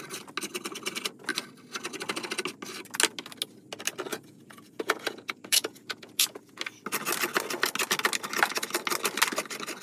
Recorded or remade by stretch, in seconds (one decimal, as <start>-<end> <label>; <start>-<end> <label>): 0.0-4.1 recorded; 4.1-6.6 remade; 6.6-9.8 recorded